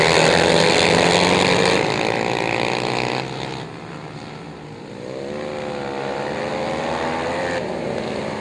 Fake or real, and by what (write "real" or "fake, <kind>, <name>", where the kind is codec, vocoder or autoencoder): real